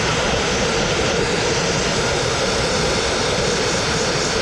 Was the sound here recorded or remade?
recorded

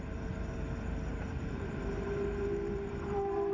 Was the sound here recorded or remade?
remade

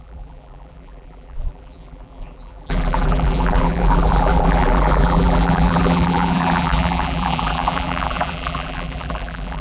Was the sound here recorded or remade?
remade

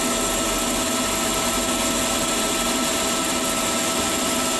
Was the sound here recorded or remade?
recorded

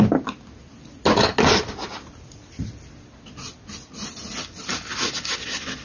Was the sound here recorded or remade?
recorded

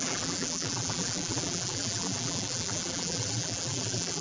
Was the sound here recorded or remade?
remade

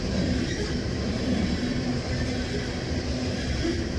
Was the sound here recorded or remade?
recorded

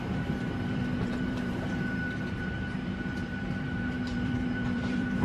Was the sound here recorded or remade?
remade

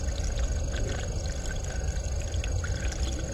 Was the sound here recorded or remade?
recorded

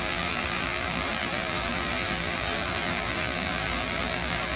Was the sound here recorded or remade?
remade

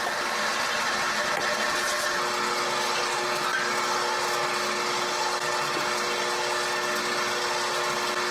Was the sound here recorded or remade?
recorded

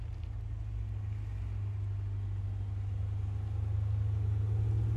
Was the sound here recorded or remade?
recorded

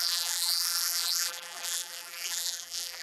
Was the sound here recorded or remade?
remade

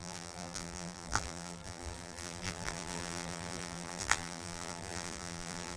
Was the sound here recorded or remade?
remade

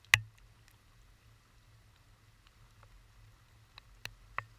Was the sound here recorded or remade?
recorded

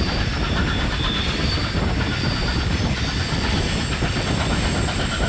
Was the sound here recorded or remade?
recorded